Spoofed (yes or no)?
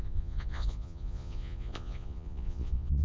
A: yes